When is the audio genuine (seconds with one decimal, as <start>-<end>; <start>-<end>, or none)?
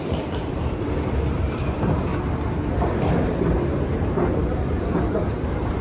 2.1-3.7